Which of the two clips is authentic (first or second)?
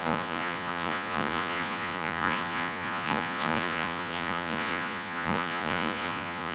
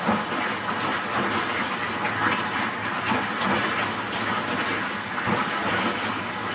second